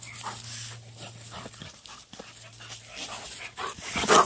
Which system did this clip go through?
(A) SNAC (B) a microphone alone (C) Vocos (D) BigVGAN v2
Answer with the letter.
B